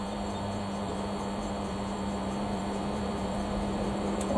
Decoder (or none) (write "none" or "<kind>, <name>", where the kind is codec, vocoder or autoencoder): vocoder, BigVGAN v2